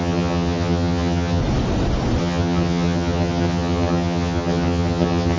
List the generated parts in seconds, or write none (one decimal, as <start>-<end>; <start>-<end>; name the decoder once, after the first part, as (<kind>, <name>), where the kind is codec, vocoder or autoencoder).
0.0-1.4 (vocoder, HiFi-GAN); 2.2-5.4